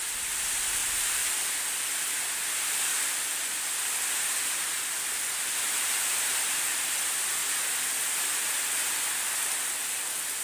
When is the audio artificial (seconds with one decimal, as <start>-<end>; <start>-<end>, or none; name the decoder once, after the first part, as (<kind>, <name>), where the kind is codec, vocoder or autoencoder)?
0.8-2.0 (vocoder, BigVGAN v2); 2.9-6.6